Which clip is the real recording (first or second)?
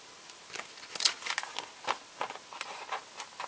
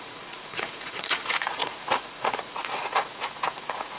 first